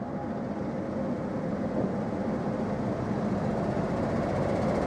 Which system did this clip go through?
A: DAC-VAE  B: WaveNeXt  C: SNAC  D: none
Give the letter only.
D